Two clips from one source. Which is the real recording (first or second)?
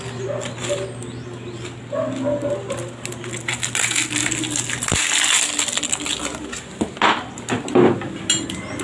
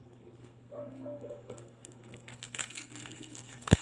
first